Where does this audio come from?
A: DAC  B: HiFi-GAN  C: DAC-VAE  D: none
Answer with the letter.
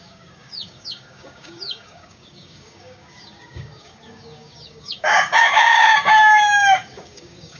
A